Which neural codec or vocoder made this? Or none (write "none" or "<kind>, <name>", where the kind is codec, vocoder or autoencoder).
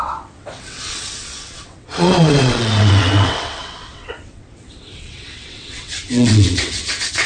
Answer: vocoder, WaveNeXt